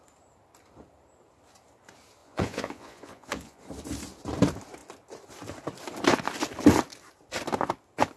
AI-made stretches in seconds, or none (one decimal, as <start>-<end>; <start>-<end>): 2.2-3.6